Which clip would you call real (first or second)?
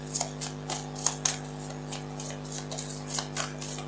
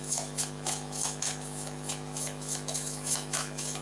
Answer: first